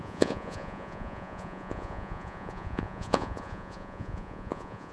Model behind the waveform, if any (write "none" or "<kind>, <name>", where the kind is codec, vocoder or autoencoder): vocoder, Vocos